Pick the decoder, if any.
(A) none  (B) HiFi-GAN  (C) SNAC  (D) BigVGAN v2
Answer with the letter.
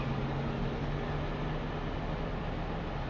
A